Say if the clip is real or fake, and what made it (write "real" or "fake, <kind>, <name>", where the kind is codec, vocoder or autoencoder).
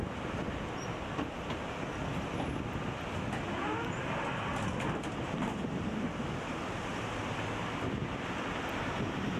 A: real